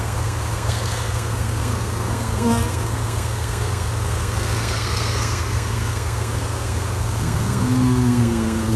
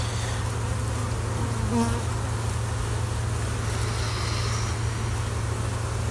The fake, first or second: first